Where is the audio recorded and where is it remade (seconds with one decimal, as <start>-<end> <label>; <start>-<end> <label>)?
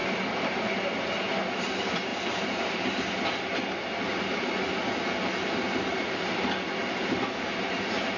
0.0-8.2 recorded